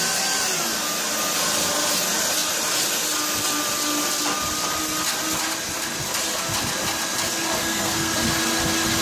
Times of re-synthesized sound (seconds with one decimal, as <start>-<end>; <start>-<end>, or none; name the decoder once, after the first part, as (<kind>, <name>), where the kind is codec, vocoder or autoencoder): 7.6-8.1 (codec, SNAC)